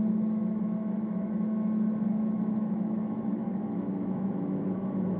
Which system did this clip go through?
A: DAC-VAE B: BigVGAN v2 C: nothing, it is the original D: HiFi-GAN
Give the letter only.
A